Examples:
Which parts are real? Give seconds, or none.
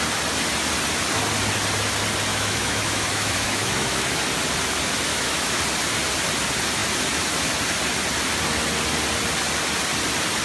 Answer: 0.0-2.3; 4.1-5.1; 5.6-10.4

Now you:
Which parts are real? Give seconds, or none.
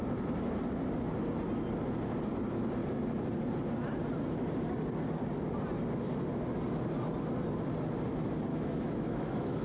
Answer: 0.0-8.5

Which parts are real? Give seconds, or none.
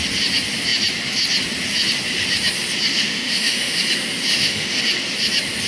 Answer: 0.0-2.9; 3.8-4.3; 4.8-5.7